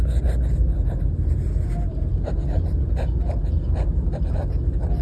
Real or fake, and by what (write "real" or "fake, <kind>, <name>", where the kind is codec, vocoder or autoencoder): real